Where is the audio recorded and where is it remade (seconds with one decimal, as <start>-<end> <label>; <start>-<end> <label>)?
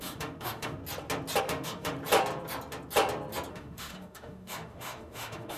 0.0-0.8 remade; 0.8-1.4 recorded; 1.4-2.0 remade; 2.0-3.5 recorded; 3.5-5.6 remade